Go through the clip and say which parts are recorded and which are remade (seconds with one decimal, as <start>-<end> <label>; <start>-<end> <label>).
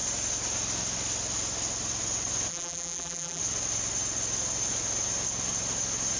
0.0-2.5 recorded; 2.5-3.4 remade; 3.4-6.2 recorded